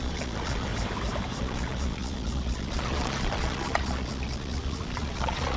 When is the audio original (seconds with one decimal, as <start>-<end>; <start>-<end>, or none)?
0.7-1.4